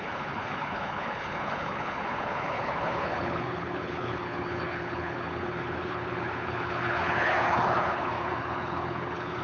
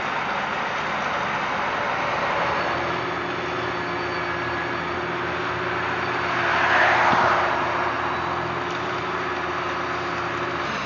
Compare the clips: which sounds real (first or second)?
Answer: second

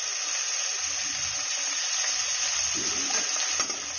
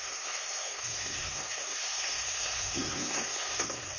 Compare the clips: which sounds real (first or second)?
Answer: first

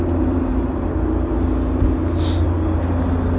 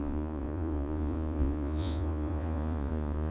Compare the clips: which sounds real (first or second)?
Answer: first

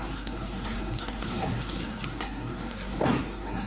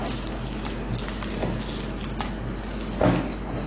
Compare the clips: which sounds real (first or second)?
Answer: second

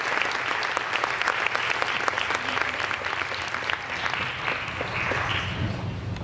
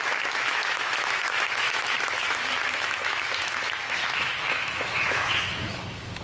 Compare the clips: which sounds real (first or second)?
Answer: first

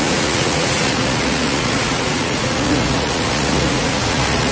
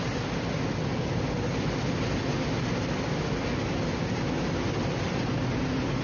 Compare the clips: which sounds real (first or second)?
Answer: second